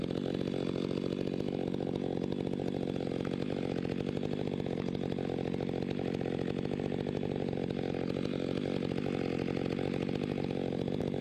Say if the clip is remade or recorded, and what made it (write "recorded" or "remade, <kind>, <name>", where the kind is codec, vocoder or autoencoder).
recorded